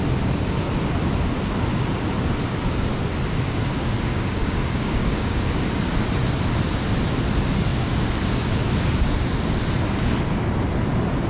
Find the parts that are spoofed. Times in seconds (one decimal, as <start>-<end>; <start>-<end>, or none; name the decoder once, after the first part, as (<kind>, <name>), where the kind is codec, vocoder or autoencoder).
3.8-5.4 (codec, DAC); 7.7-9.0